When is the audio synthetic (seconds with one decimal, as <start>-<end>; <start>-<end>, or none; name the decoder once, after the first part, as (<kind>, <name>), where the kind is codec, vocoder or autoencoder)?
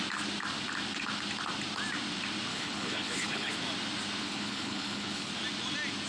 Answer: 2.5-3.5 (codec, HILCodec); 4.2-5.3